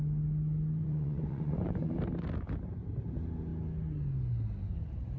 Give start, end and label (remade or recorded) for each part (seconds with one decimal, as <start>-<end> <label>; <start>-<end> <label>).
0.0-0.8 recorded; 0.8-1.9 remade; 1.9-5.2 recorded